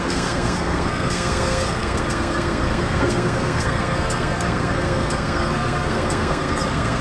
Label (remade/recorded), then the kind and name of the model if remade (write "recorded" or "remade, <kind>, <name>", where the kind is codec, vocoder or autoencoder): remade, codec, SNAC